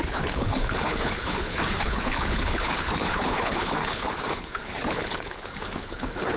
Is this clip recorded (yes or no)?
no